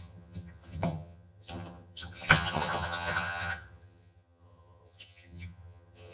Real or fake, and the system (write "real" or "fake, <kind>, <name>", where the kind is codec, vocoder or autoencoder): fake, vocoder, HiFi-GAN